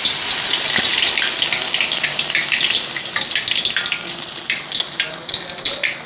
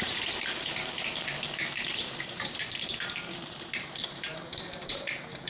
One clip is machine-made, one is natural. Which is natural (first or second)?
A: first